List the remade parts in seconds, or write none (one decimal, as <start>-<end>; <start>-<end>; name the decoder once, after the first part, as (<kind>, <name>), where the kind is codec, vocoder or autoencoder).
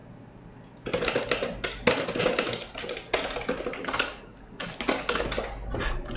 3.8-5.2 (codec, DAC)